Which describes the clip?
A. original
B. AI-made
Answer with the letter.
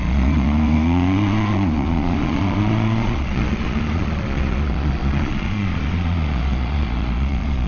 B